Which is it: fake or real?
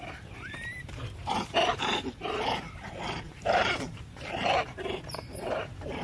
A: fake